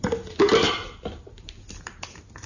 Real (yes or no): yes